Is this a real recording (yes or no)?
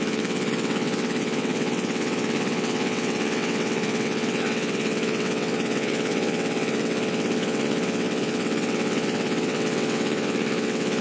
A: no